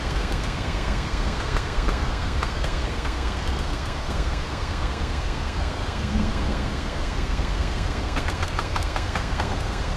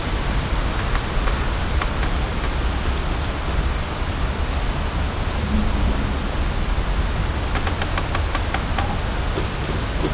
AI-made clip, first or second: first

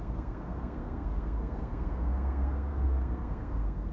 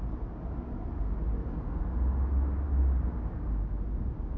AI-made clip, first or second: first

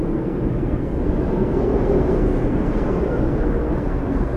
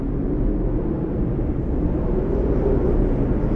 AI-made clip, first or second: first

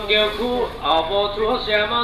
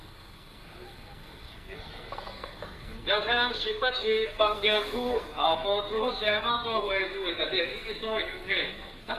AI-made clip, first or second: second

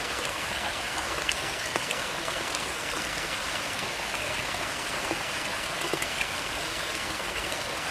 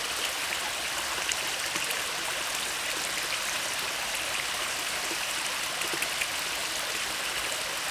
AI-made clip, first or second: first